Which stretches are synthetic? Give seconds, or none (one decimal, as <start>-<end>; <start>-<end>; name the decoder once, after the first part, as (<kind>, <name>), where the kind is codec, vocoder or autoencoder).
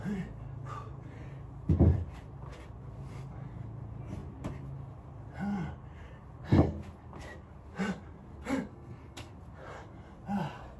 8.7-9.3 (codec, SNAC)